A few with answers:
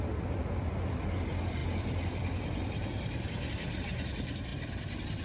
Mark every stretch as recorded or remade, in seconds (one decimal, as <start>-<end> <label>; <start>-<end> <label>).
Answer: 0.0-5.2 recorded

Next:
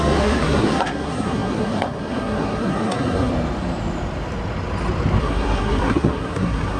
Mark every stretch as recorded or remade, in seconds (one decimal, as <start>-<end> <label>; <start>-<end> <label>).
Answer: 0.0-3.3 remade; 3.3-5.2 recorded; 5.2-6.8 remade

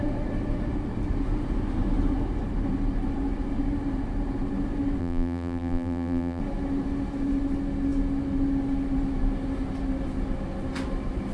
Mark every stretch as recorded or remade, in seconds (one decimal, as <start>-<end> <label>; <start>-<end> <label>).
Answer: 0.0-5.0 recorded; 5.0-6.4 remade; 6.4-11.3 recorded

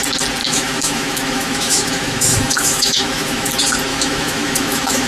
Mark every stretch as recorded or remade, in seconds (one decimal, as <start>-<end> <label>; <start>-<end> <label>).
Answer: 0.0-0.4 recorded; 0.4-3.5 remade; 3.5-3.9 recorded; 3.9-5.1 remade

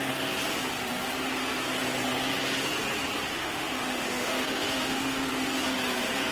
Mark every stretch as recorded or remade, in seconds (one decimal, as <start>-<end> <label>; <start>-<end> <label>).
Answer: 0.0-3.3 recorded; 3.3-5.3 remade; 5.3-6.3 recorded

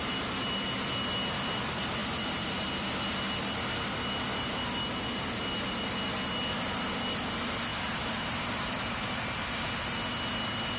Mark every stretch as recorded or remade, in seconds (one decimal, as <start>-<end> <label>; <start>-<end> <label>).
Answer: 0.0-7.7 recorded; 7.7-9.7 remade; 9.7-10.8 recorded

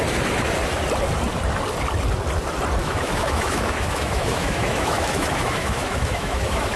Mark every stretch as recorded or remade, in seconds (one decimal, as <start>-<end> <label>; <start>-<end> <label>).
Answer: 0.0-2.8 recorded; 2.8-6.8 remade